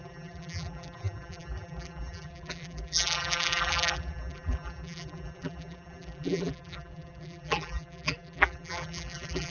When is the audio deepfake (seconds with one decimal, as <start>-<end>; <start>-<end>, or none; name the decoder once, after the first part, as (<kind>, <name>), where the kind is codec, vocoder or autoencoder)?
0.0-9.5 (vocoder, BigVGAN v2)